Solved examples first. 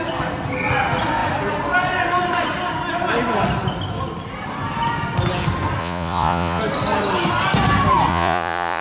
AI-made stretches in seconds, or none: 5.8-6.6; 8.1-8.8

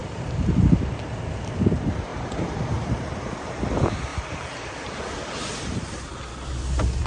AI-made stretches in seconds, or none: 0.0-0.8; 2.1-2.9; 4.1-6.3

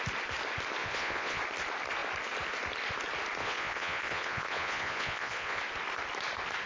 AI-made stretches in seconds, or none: 0.8-1.4; 3.4-5.6